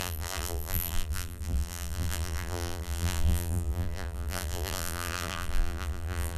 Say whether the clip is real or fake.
fake